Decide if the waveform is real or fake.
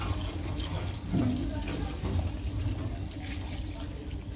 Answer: real